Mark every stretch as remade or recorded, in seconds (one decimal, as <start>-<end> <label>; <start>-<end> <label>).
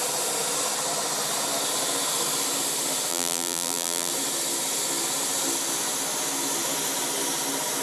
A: 0.0-3.1 recorded; 3.1-4.1 remade; 4.1-7.8 recorded